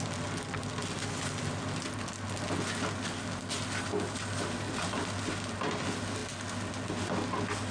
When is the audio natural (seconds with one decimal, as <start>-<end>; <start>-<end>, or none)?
0.0-7.7